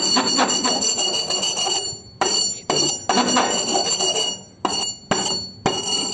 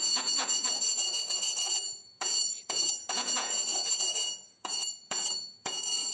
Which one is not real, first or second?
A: second